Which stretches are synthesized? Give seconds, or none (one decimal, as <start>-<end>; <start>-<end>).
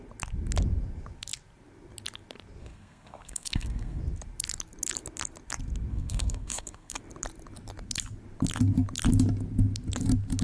2.6-4.0; 5.9-7.0